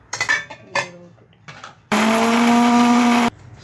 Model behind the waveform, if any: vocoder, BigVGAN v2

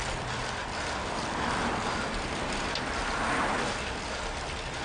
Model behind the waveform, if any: none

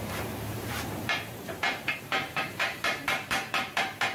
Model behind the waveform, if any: vocoder, BigVGAN v2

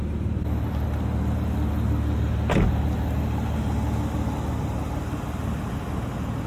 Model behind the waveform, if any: none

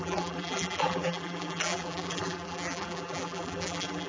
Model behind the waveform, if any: vocoder, BigVGAN v2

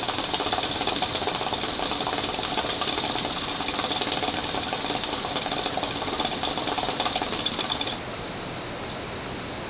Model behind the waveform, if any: none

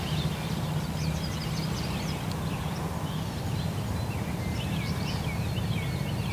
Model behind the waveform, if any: none